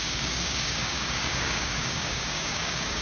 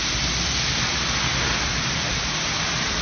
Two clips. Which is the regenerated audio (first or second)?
first